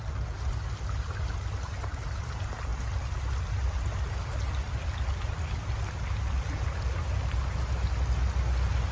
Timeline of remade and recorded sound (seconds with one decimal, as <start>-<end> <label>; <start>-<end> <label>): 0.0-8.9 recorded